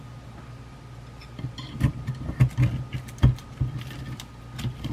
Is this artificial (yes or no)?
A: no